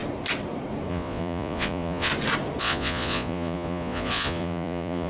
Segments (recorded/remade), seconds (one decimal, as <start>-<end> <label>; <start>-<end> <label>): 0.0-0.9 recorded; 0.9-2.1 remade; 2.1-2.6 recorded; 2.6-5.1 remade